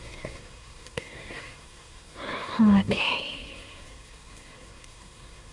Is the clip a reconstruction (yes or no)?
yes